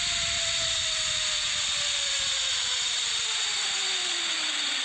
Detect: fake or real real